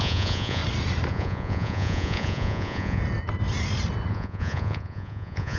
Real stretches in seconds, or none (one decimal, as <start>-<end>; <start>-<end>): 0.6-1.1; 3.0-4.1